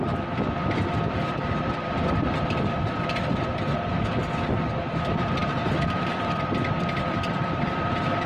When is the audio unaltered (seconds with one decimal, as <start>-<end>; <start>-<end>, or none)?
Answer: 4.1-4.8